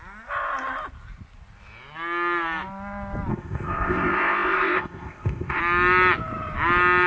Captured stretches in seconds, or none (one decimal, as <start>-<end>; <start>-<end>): 0.0-3.3; 5.6-7.1